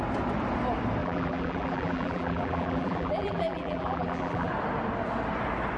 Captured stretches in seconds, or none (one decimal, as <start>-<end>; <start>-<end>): 0.0-1.0; 4.5-5.8